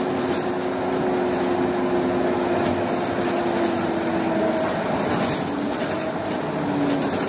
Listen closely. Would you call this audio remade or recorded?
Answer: recorded